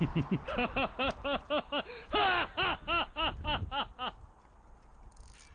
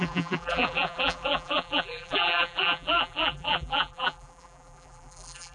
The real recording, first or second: first